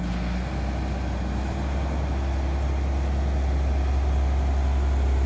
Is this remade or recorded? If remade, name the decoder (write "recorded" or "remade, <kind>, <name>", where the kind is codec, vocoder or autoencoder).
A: recorded